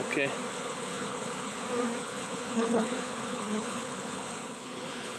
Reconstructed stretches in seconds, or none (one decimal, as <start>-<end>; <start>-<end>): 0.5-1.6; 2.0-5.2